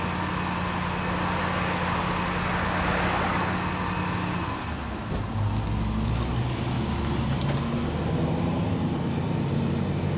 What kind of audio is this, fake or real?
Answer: real